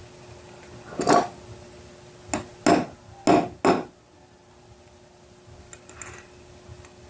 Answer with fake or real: real